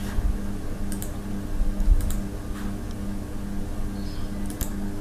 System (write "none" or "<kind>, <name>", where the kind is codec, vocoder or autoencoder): none